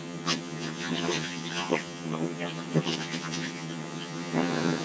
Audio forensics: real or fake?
fake